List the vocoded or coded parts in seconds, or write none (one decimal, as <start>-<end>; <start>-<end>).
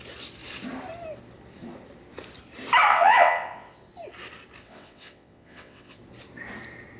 2.9-3.9; 4.6-6.0